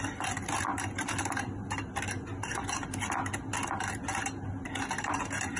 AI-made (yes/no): no